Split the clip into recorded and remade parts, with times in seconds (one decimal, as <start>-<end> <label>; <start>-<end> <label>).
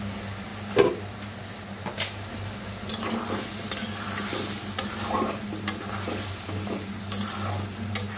0.0-8.2 recorded